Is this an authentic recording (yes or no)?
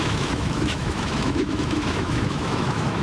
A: no